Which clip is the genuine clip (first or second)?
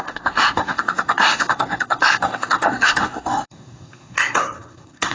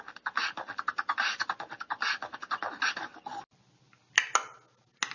second